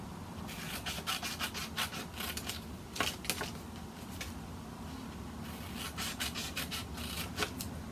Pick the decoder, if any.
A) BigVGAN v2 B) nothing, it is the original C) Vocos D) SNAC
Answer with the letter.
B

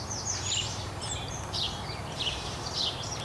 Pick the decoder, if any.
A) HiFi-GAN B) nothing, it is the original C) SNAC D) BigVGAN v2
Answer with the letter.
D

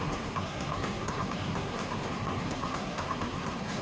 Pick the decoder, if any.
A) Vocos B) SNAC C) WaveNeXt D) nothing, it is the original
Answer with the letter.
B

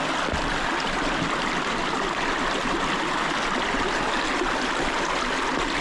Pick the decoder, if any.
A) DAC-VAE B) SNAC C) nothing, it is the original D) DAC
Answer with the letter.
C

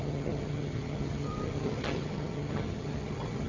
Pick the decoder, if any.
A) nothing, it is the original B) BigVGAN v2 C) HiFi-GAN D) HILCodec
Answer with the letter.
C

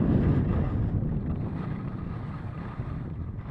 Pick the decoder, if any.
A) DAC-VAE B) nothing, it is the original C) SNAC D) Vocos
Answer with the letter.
B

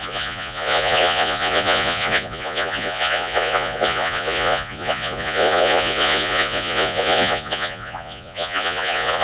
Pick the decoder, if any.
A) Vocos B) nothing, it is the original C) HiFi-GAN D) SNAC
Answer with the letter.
A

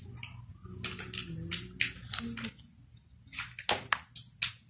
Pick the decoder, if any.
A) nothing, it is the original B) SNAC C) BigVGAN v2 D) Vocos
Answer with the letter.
A